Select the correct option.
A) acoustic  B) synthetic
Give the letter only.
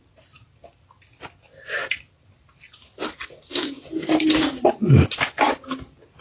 A